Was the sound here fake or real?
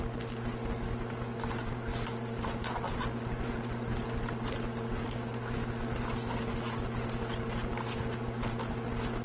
real